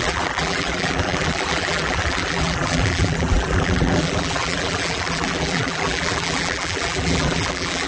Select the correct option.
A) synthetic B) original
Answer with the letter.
A